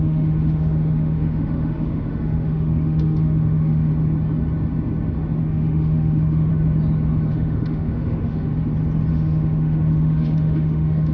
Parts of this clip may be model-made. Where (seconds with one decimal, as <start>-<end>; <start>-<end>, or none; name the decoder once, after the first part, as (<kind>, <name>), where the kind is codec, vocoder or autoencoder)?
0.0-3.9 (autoencoder, DAC-VAE); 5.4-6.5; 7.3-8.5; 9.1-11.1